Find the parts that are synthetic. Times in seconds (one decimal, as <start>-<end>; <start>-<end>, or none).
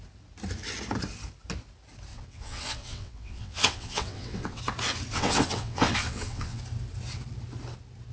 2.1-4.6; 5.1-6.6